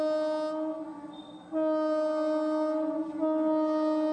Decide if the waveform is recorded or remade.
recorded